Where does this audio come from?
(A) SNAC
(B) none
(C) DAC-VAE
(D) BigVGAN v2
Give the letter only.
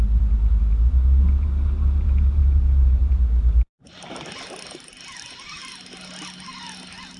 B